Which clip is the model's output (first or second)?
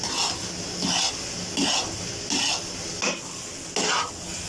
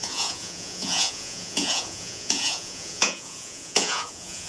second